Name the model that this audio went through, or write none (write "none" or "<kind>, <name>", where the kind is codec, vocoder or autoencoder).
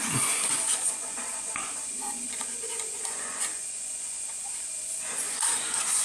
vocoder, Vocos